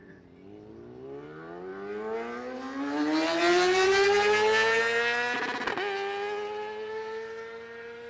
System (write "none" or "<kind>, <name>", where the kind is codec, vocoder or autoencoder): none